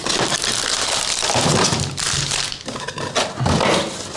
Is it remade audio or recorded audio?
recorded